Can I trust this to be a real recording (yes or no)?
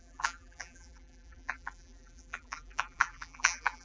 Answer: no